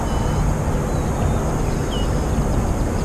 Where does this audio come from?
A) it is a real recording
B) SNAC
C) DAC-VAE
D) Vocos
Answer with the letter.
A